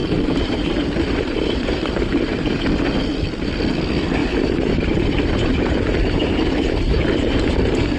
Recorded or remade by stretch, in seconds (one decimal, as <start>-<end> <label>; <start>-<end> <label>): 0.0-3.0 remade; 3.0-4.2 recorded; 4.2-7.3 remade; 7.3-8.0 recorded